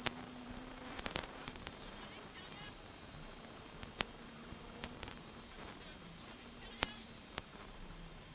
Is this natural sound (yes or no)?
no